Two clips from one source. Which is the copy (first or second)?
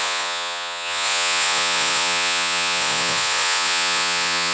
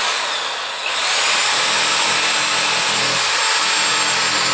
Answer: first